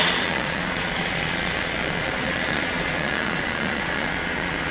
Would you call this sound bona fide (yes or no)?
no